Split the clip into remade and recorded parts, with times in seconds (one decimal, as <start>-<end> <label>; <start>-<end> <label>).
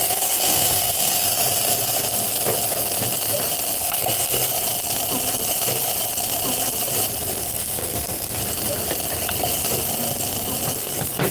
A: 0.0-1.3 remade; 1.3-3.8 recorded; 3.8-4.5 remade; 4.5-7.4 recorded; 7.4-8.4 remade; 8.4-10.8 recorded; 10.8-11.3 remade